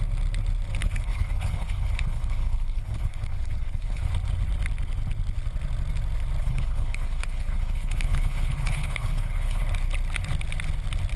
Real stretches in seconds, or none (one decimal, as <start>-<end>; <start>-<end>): 0.0-0.8; 4.1-6.4; 9.6-11.2